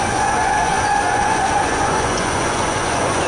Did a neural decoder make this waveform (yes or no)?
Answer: yes